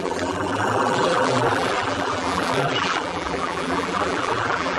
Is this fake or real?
fake